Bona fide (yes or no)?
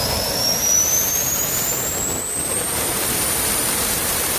no